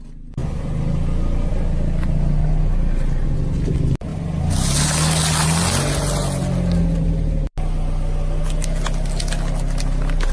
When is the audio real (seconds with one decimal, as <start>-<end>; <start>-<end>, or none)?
0.0-10.3